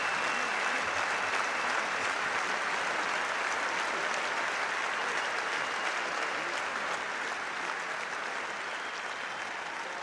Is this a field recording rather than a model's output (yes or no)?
yes